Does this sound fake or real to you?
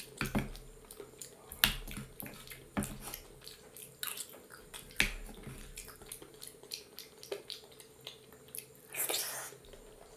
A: real